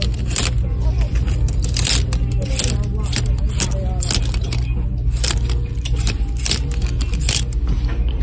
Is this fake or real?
real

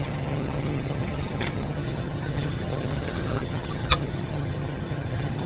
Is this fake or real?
fake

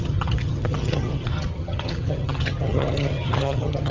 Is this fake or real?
fake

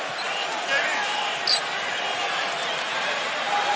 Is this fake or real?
real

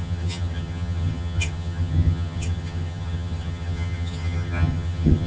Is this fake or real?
fake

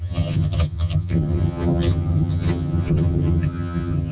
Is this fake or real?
fake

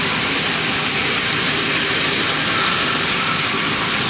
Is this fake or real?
real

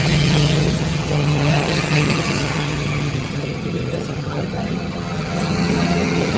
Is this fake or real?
fake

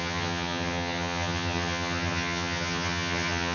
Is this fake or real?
fake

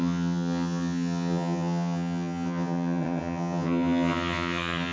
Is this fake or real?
fake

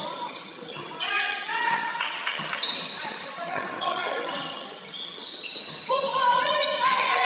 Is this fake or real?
fake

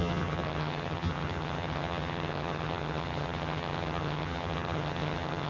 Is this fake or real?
fake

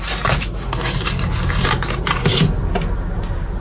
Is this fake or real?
real